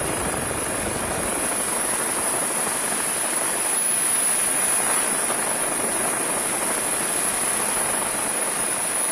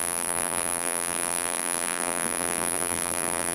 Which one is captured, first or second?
first